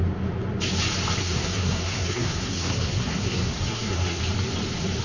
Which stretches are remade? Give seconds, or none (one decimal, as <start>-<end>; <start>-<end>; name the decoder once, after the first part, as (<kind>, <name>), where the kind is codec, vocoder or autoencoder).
1.2-4.2 (codec, SNAC)

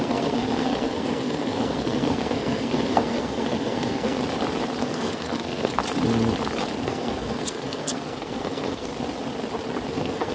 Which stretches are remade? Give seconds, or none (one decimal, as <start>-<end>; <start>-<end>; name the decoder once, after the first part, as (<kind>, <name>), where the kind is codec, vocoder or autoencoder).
0.0-4.2 (codec, SNAC); 4.8-5.8; 6.8-8.9; 9.9-10.3

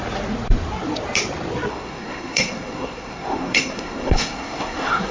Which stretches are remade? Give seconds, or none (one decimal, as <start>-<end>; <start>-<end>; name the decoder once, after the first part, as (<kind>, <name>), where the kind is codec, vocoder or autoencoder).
1.7-5.1 (codec, SNAC)

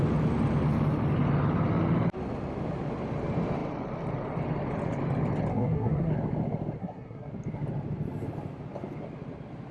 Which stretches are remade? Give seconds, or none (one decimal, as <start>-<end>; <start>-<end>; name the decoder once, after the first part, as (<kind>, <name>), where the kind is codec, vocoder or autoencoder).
5.5-6.1 (codec, SNAC); 6.8-7.3

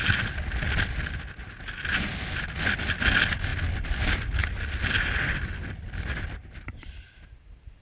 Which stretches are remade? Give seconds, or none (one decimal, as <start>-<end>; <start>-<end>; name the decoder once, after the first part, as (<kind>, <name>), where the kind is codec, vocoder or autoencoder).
none